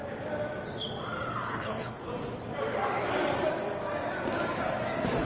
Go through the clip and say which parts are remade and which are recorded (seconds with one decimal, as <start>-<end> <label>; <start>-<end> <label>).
0.0-1.5 recorded; 1.5-2.1 remade; 2.1-5.2 recorded